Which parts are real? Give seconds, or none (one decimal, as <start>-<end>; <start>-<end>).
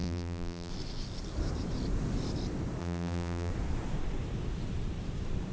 0.7-2.8; 3.5-5.5